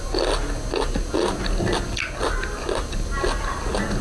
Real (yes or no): yes